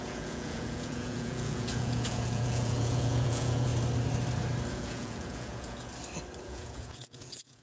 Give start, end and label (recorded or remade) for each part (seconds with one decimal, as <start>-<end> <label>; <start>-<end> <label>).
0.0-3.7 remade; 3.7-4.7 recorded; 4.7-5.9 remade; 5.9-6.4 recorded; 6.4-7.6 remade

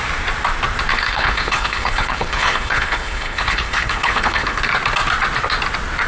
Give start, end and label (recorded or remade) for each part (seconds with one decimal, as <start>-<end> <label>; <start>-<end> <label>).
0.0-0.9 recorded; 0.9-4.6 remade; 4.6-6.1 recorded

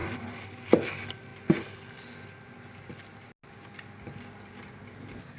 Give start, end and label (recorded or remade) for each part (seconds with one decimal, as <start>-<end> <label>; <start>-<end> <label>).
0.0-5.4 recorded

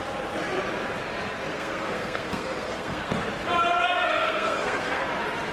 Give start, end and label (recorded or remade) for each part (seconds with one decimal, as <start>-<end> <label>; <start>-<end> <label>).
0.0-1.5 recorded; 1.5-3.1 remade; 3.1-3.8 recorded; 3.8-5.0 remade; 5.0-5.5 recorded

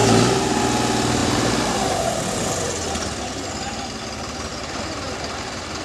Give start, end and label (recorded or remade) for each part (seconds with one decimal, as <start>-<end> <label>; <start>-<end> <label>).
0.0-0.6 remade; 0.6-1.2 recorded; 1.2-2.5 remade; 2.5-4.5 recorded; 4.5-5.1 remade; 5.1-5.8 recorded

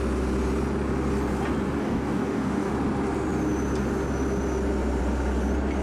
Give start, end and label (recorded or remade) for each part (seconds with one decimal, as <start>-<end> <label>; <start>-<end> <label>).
0.0-1.8 recorded; 1.8-2.7 remade; 2.7-5.8 recorded